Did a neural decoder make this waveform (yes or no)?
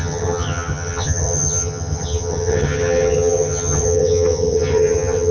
yes